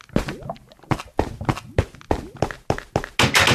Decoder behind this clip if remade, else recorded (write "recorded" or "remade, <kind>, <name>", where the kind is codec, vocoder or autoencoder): recorded